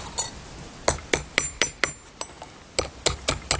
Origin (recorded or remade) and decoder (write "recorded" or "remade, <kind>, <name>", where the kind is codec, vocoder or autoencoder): recorded